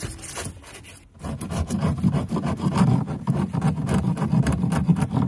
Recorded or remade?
recorded